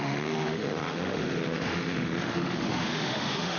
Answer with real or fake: fake